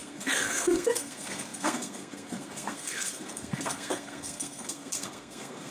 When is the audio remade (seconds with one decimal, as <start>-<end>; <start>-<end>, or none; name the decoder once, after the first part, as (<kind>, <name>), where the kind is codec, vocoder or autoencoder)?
0.0-5.7 (codec, SNAC)